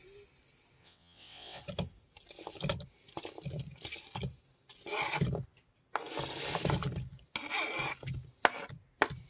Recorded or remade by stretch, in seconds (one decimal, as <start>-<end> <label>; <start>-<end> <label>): 0.0-0.8 recorded; 0.8-1.6 remade; 1.6-9.3 recorded